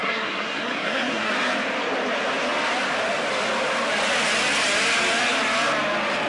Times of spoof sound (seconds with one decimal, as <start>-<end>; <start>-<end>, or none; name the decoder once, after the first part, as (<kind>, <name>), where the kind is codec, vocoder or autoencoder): 0.0-1.3 (codec, SNAC)